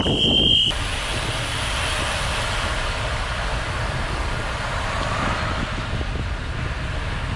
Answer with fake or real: real